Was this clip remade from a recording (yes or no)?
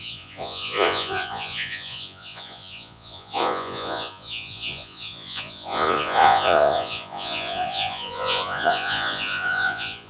yes